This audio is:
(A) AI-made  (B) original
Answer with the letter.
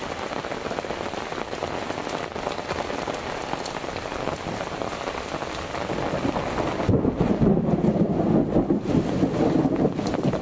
B